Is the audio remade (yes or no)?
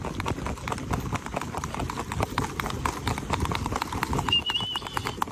no